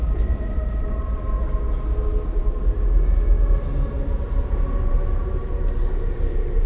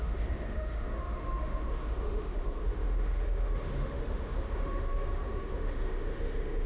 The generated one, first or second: second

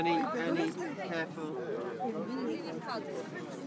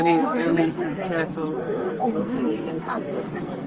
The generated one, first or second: second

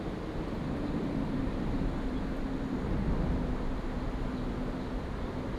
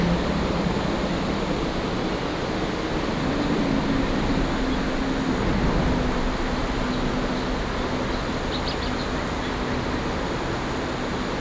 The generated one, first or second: first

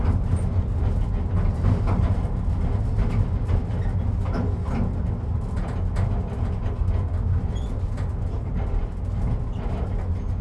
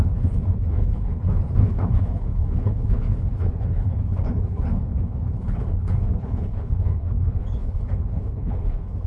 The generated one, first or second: second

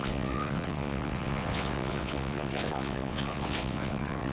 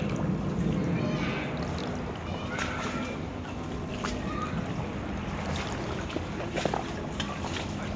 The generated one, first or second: first